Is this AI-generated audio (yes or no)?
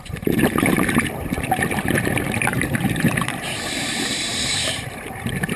yes